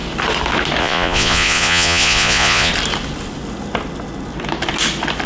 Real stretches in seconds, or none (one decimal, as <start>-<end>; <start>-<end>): 0.0-0.8; 2.7-5.3